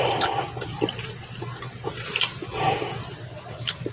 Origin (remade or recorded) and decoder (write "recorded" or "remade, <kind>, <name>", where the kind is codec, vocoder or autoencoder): recorded